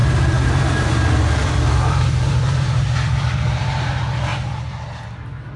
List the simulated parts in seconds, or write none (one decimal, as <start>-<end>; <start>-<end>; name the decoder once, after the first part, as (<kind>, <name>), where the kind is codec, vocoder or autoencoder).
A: 1.4-3.6 (vocoder, BigVGAN v2)